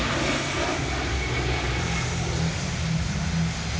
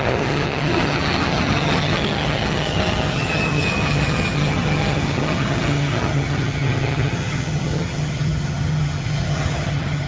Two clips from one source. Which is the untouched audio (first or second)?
first